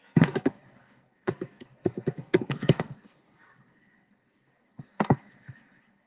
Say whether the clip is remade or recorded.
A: remade